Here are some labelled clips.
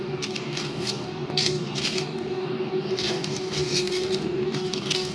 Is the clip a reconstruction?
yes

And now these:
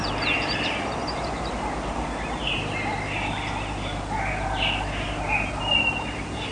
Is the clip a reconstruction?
no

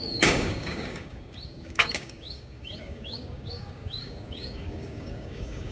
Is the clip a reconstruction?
yes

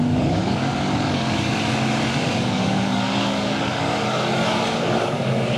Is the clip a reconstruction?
yes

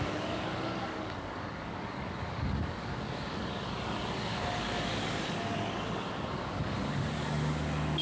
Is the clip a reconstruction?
yes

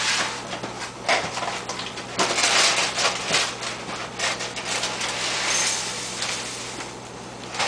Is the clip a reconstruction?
no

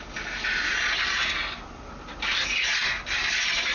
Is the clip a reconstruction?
no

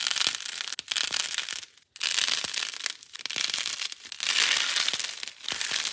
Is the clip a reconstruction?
no